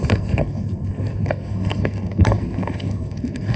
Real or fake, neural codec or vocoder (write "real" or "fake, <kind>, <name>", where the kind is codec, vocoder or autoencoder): fake, codec, SNAC